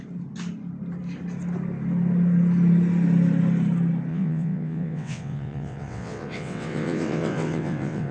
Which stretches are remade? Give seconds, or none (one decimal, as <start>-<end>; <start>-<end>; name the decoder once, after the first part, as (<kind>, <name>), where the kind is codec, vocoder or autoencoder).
4.1-8.1 (vocoder, WaveNeXt)